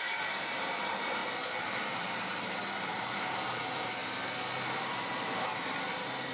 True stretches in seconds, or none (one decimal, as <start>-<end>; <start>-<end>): 1.2-2.9; 4.0-4.6